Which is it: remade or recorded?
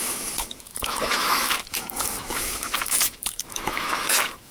remade